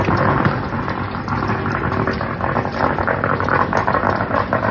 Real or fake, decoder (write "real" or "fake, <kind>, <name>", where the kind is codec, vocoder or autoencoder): real